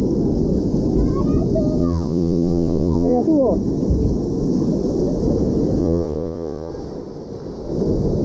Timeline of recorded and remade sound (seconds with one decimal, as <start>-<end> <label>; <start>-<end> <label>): 0.0-1.8 recorded; 1.8-3.2 remade; 3.2-5.8 recorded; 5.8-6.7 remade; 6.7-8.2 recorded